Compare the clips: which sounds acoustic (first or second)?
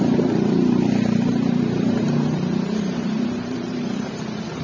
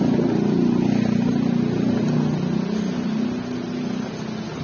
second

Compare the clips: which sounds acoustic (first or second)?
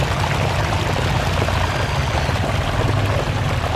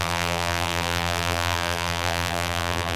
first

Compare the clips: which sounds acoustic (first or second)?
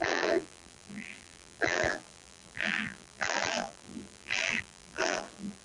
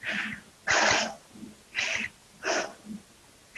second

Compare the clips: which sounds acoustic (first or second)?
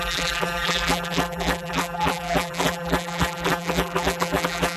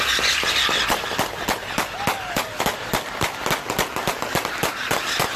second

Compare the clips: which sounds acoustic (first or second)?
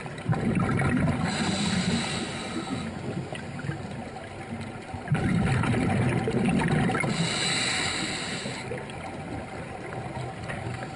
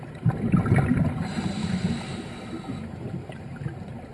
first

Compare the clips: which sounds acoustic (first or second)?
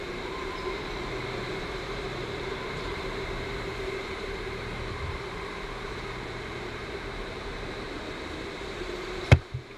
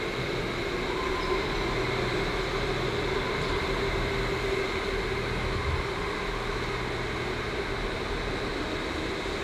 second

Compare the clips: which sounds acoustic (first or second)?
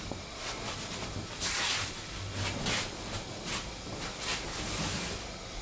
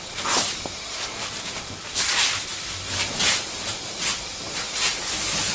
first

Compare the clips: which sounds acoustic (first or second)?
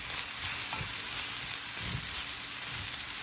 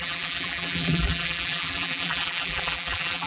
first